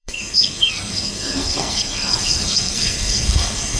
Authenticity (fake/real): fake